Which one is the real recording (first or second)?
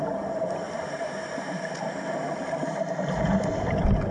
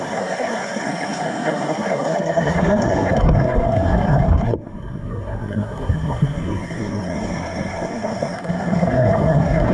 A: first